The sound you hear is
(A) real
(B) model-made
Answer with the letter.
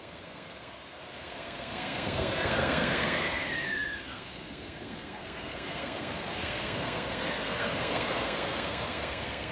B